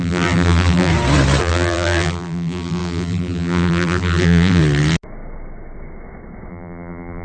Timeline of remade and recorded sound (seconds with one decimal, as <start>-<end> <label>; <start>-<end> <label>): 0.0-0.9 remade; 0.9-1.4 recorded; 1.4-4.6 remade; 4.6-6.5 recorded; 6.5-7.2 remade

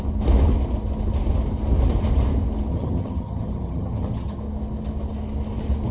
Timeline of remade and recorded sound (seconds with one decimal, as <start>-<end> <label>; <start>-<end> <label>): 0.0-2.7 recorded; 2.7-4.4 remade; 4.4-5.9 recorded

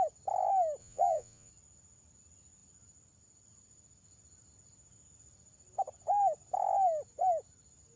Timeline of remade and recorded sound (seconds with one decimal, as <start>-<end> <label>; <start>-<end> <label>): 0.0-0.8 recorded; 0.8-1.5 remade; 1.5-8.0 recorded